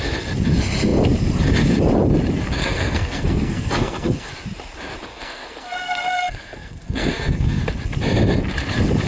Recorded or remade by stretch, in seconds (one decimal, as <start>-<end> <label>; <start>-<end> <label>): 0.0-2.6 recorded; 2.6-4.3 remade; 4.3-5.1 recorded; 5.1-7.6 remade; 7.6-9.1 recorded